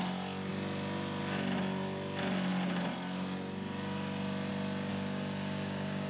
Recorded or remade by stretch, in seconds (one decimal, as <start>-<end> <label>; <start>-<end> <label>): 0.0-4.9 recorded; 4.9-6.1 remade